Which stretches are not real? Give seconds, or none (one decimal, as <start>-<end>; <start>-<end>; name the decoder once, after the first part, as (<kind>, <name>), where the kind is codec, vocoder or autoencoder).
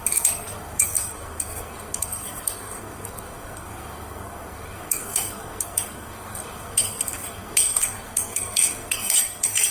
0.0-9.7 (codec, SNAC)